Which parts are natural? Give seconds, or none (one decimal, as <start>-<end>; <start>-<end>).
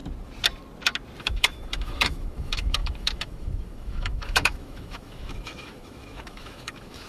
0.0-1.2